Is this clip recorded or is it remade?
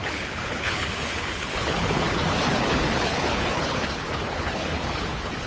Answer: remade